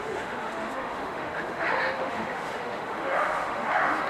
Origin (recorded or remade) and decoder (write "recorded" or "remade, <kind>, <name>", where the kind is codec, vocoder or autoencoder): remade, autoencoder, DAC-VAE